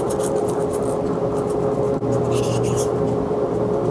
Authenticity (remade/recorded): recorded